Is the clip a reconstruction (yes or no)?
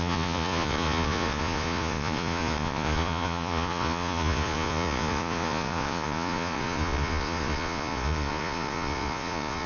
yes